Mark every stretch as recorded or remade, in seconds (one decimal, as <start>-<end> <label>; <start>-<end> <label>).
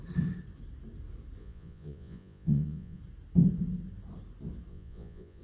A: 0.0-1.4 recorded; 1.4-3.0 remade; 3.0-4.7 recorded; 4.7-5.4 remade